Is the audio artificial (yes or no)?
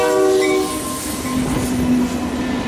no